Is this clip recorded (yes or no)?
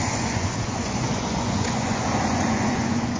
no